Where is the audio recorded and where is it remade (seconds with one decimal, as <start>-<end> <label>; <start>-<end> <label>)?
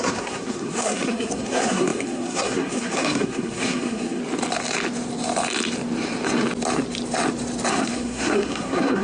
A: 0.0-4.2 remade; 4.2-7.7 recorded; 7.7-9.0 remade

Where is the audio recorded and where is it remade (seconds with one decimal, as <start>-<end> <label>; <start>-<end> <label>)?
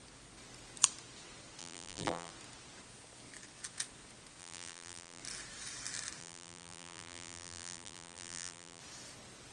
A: 0.0-1.6 recorded; 1.6-2.3 remade; 2.3-4.4 recorded; 4.4-5.2 remade; 5.2-6.2 recorded; 6.2-8.8 remade; 8.8-9.5 recorded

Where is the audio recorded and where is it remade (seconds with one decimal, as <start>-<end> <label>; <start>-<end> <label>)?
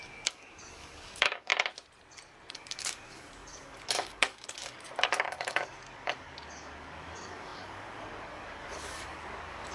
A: 0.0-1.5 remade; 1.5-2.5 recorded; 2.5-9.7 remade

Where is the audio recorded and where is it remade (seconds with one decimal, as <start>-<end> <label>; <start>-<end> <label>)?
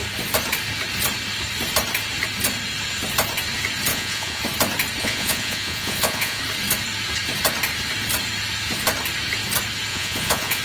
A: 0.0-3.9 recorded; 3.9-4.4 remade; 4.4-5.0 recorded; 5.0-6.4 remade; 6.4-9.9 recorded; 9.9-10.6 remade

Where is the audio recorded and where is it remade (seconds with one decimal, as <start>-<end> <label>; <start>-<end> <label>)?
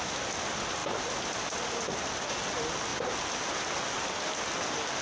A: 0.0-2.9 recorded; 2.9-4.1 remade; 4.1-5.0 recorded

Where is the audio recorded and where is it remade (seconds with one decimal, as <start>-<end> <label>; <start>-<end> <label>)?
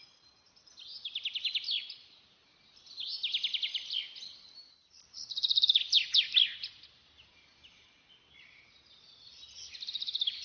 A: 0.0-10.4 recorded